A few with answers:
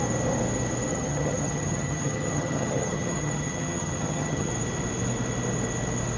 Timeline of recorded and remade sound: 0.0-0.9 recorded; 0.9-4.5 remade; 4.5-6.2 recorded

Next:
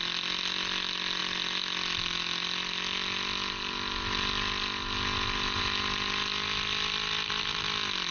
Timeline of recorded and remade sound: 0.0-8.1 recorded

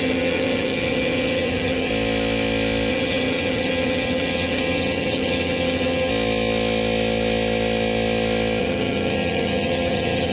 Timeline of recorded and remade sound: 0.0-1.9 remade; 1.9-2.9 recorded; 2.9-6.1 remade; 6.1-8.6 recorded; 8.6-10.3 remade

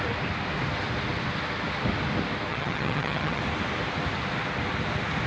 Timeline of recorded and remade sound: 0.0-2.5 recorded; 2.5-3.4 remade; 3.4-5.3 recorded

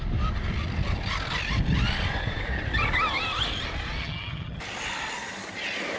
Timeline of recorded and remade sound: 0.0-4.0 recorded; 4.0-4.6 remade; 4.6-6.0 recorded

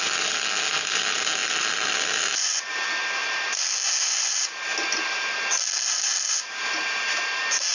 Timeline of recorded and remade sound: 0.0-7.7 recorded

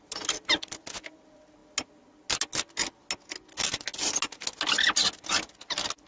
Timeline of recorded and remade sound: 0.0-6.1 recorded

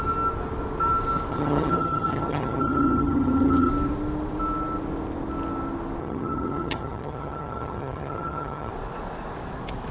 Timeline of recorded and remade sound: 0.0-1.3 recorded; 1.3-3.7 remade; 3.7-6.0 recorded; 6.0-8.7 remade; 8.7-9.9 recorded